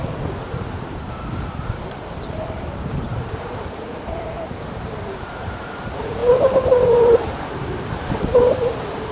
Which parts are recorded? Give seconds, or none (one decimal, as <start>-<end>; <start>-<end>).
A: none